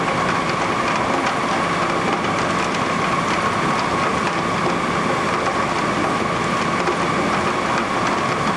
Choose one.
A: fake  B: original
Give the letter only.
B